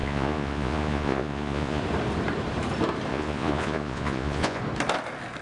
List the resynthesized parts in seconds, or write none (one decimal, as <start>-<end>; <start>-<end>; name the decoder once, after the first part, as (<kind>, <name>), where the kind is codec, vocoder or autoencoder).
0.0-1.8 (vocoder, Vocos); 3.1-4.6